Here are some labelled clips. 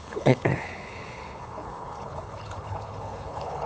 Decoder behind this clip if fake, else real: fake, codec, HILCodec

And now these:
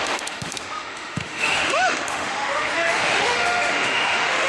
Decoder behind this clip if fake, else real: fake, autoencoder, DAC-VAE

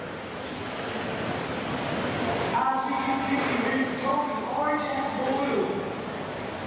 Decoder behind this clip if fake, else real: real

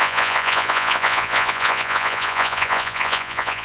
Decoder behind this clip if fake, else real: fake, vocoder, Vocos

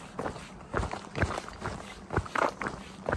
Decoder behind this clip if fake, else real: real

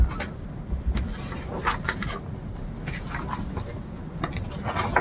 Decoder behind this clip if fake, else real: real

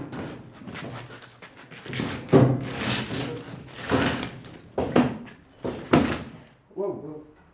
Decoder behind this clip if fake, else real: real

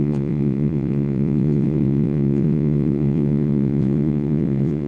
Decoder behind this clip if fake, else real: fake, vocoder, WaveNeXt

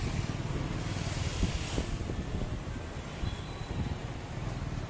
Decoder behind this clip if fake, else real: real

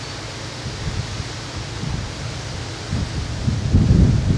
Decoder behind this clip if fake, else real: real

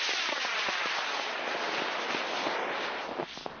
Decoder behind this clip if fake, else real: real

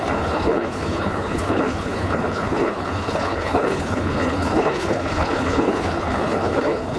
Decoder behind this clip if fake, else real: fake, codec, HILCodec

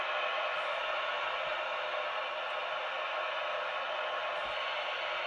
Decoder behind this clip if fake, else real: real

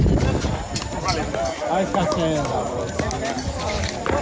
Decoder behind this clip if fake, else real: real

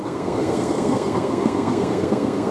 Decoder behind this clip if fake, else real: fake, codec, SNAC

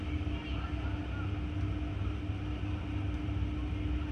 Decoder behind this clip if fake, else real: real